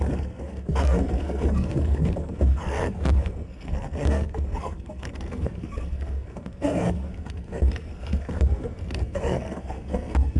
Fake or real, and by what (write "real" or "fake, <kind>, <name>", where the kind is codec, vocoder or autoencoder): fake, codec, SNAC